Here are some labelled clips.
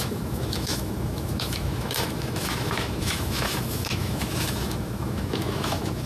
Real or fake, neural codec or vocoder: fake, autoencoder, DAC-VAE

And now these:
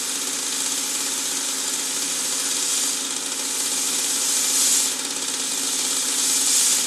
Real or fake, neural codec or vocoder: real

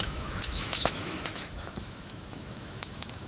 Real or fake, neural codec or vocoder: fake, autoencoder, DAC-VAE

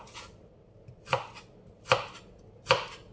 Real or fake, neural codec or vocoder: real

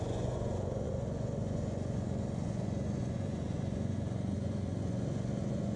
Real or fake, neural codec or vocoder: fake, vocoder, Vocos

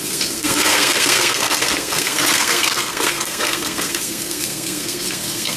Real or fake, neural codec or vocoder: fake, codec, SNAC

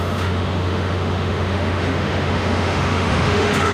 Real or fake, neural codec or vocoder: fake, autoencoder, DAC-VAE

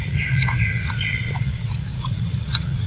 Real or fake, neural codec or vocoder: fake, vocoder, Vocos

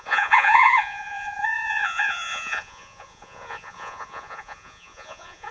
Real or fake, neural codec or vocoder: fake, vocoder, Vocos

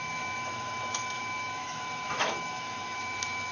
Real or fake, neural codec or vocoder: fake, autoencoder, DAC-VAE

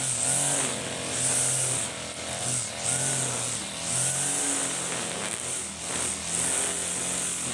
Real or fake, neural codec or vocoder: real